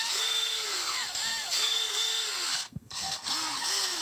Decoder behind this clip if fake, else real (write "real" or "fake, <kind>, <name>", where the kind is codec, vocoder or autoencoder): fake, codec, SNAC